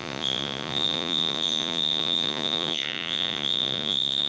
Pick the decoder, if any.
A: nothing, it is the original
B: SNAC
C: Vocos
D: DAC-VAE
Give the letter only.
C